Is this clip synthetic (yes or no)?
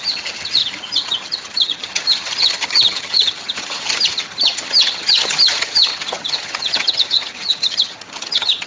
yes